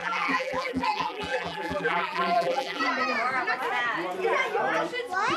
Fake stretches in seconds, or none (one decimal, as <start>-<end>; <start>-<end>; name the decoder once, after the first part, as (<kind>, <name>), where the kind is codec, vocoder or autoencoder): 0.0-2.8 (vocoder, BigVGAN v2)